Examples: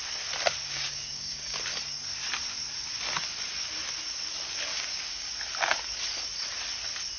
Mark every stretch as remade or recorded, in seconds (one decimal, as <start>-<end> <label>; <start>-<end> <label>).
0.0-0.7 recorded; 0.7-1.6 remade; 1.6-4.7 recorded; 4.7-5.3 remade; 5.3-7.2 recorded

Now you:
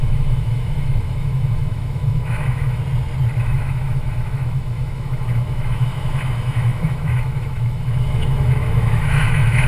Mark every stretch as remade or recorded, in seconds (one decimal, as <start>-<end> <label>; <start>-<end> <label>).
0.0-2.8 remade; 2.8-3.4 recorded; 3.4-9.7 remade

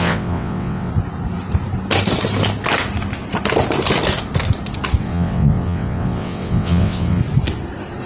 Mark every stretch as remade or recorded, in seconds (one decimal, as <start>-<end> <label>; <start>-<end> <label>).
0.0-0.9 remade; 0.9-5.0 recorded; 5.0-7.2 remade; 7.2-8.1 recorded

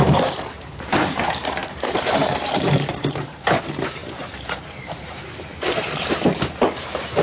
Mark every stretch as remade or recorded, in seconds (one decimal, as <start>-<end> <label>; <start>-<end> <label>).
0.0-7.2 remade

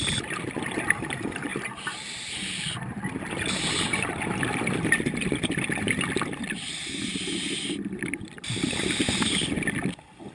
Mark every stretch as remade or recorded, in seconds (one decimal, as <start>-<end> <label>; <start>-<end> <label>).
0.0-10.3 recorded